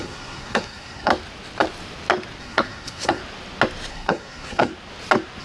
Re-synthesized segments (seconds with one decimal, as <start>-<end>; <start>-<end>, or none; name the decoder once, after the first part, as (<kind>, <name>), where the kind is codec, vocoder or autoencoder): 0.0-1.1 (codec, SNAC); 2.4-3.2; 3.9-4.7